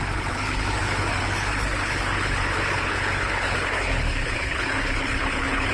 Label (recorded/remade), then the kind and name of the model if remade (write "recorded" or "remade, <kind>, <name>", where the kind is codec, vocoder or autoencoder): remade, codec, HILCodec